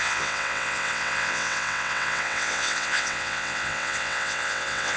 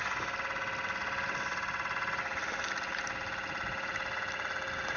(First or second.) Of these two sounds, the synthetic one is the first